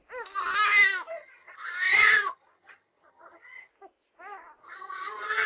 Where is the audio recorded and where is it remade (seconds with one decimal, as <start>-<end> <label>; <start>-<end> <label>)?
0.0-1.1 recorded; 1.1-3.7 remade; 3.7-4.6 recorded; 4.6-5.5 remade